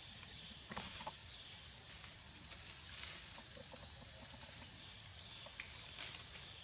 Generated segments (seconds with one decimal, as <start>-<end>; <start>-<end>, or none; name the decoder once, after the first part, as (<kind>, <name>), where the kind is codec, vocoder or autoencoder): 0.0-1.2 (vocoder, BigVGAN v2); 4.1-5.1